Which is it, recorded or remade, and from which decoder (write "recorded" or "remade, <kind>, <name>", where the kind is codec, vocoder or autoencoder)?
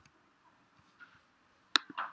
recorded